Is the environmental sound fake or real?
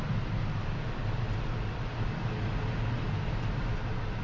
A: real